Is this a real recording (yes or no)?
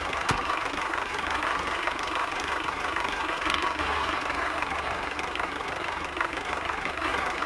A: no